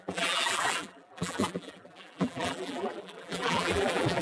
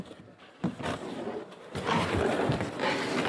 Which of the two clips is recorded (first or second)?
second